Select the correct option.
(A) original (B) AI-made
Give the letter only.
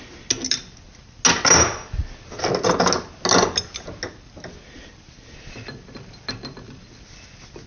A